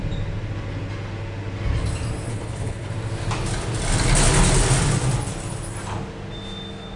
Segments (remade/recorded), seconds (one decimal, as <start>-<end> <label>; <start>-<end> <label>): 0.0-2.3 recorded; 2.3-2.9 remade; 2.9-7.0 recorded